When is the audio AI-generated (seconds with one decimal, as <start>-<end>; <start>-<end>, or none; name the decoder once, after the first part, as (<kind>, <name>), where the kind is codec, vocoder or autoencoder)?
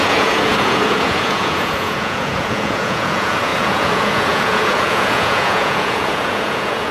0.0-6.9 (vocoder, Vocos)